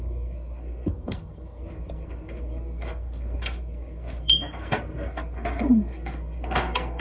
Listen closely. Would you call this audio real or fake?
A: fake